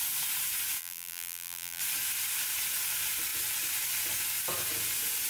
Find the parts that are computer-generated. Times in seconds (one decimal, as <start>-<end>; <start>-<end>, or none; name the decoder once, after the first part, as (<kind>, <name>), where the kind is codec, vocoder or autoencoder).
0.8-1.8 (vocoder, BigVGAN v2)